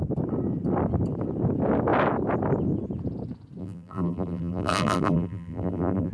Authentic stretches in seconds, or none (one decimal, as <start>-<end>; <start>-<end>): 0.0-3.6

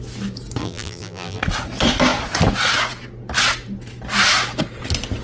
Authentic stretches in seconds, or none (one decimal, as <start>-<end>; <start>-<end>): 0.0-0.6; 1.4-5.2

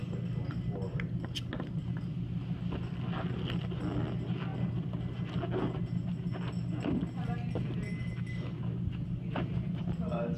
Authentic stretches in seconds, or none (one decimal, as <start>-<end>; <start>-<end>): 0.0-10.4

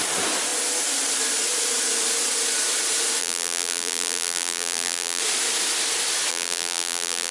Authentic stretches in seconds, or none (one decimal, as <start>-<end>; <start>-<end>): 0.0-3.2; 5.2-6.3

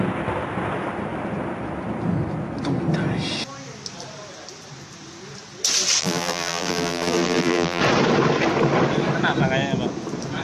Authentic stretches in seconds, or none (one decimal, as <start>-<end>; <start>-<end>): 0.0-6.0; 7.8-10.4

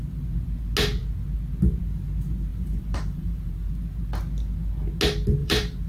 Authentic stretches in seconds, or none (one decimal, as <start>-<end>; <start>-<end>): 0.0-2.5; 3.7-5.4